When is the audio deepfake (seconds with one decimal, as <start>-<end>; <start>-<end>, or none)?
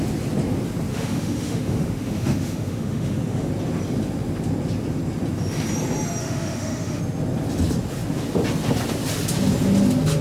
0.9-3.5; 6.2-7.0